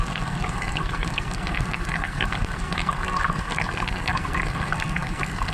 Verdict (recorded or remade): remade